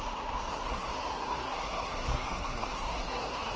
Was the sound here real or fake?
fake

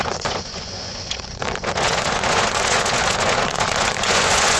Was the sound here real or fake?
fake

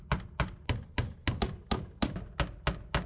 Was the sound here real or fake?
real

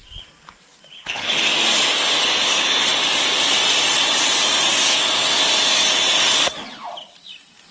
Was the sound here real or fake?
real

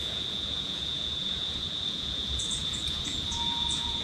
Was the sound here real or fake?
fake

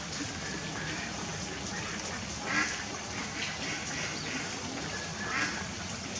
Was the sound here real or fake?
real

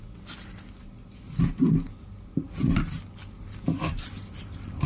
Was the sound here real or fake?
real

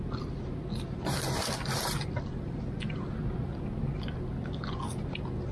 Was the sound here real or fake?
real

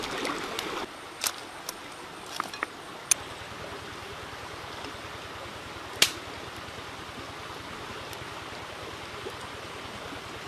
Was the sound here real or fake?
real